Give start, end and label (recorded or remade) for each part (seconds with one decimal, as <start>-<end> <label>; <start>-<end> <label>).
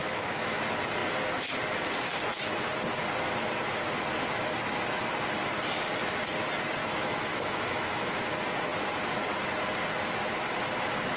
0.0-0.6 remade; 0.6-6.8 recorded; 6.8-8.2 remade; 8.2-11.2 recorded